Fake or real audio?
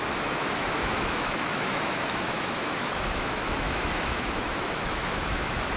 fake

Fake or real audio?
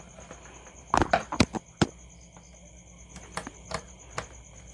real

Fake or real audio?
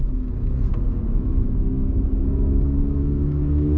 fake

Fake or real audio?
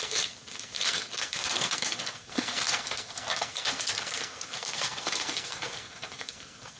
fake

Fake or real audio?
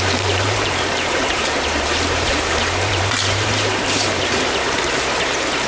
fake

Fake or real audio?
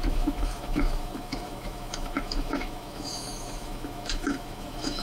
fake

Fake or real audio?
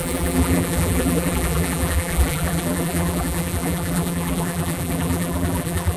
fake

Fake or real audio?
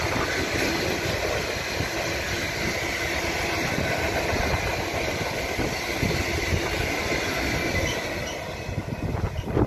real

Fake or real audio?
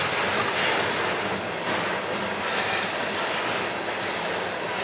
real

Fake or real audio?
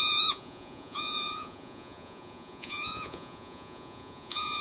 fake